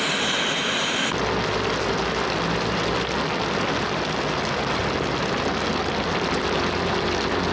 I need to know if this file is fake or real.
real